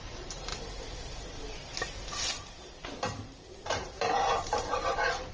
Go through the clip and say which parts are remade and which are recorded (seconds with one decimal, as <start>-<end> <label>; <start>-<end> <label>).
0.0-0.5 remade; 0.5-3.7 recorded; 3.7-5.3 remade